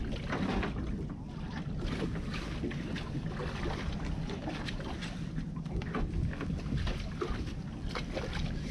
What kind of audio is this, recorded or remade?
recorded